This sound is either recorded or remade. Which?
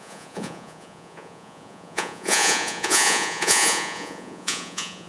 remade